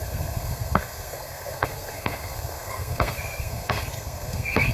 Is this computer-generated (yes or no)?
yes